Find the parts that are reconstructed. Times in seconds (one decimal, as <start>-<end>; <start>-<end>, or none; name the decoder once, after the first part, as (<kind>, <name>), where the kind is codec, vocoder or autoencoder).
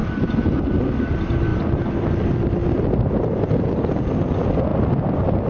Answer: none